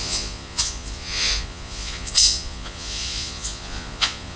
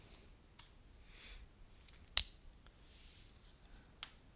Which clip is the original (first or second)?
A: second